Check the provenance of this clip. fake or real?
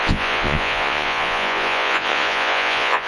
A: fake